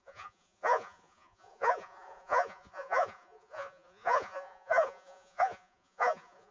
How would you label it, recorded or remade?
remade